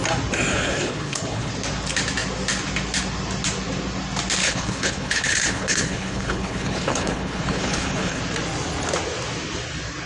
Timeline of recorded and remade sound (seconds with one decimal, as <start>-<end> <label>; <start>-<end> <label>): 0.0-0.5 recorded; 0.5-1.5 remade; 1.5-4.4 recorded; 4.4-8.2 remade; 8.2-10.1 recorded